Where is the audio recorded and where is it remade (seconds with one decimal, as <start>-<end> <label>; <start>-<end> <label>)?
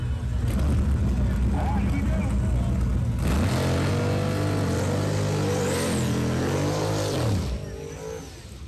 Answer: 0.0-8.7 recorded